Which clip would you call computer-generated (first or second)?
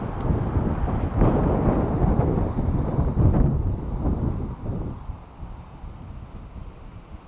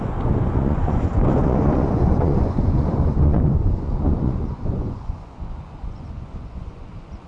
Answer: second